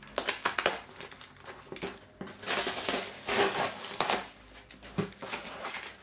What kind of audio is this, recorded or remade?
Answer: recorded